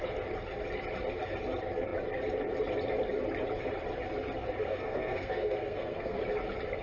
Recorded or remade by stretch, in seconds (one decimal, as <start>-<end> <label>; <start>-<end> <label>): 0.0-4.6 recorded; 4.6-6.2 remade; 6.2-6.8 recorded